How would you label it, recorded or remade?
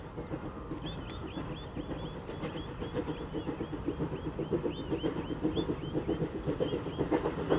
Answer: recorded